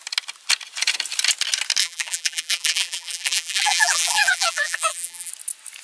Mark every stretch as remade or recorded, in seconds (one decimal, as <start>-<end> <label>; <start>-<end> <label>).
0.0-1.8 recorded; 1.8-5.3 remade; 5.3-5.8 recorded